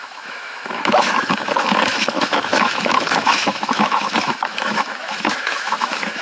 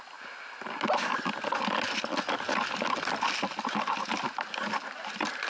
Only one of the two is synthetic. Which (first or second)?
first